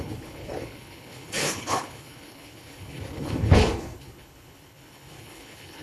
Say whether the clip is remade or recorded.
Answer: remade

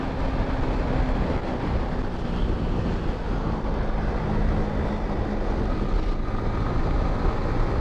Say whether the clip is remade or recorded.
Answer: recorded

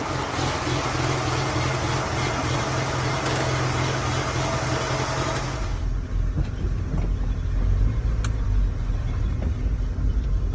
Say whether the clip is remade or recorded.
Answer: recorded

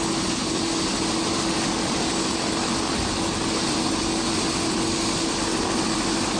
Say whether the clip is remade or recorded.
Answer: recorded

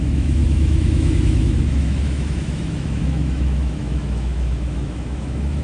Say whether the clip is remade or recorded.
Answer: remade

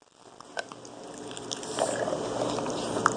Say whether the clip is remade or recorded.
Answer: recorded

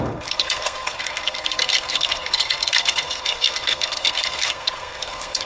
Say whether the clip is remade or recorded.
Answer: remade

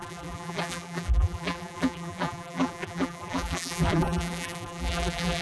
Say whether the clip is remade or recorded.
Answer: remade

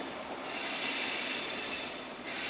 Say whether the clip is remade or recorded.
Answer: recorded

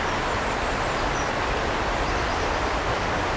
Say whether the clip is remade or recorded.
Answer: recorded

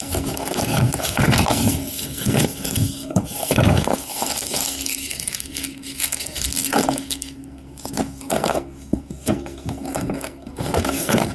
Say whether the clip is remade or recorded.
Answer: remade